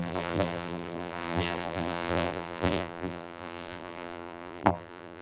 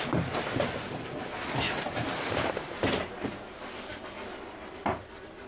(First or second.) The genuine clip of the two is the second